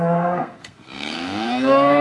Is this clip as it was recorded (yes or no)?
no